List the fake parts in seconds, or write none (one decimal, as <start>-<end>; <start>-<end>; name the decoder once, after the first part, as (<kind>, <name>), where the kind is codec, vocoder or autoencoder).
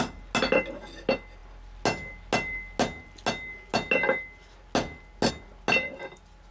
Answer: none